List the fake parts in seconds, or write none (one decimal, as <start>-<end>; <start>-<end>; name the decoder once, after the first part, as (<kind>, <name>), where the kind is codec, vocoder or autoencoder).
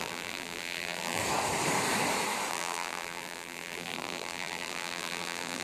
0.0-1.2 (vocoder, BigVGAN v2); 2.5-5.6